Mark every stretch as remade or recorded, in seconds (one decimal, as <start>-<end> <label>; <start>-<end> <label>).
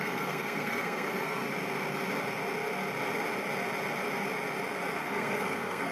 0.0-1.4 remade; 1.4-4.9 recorded; 4.9-5.9 remade